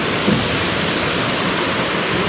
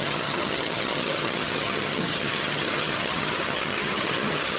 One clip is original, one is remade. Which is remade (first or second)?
second